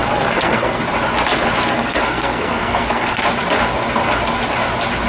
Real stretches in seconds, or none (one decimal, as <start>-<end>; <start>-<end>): 0.8-1.7; 3.2-5.1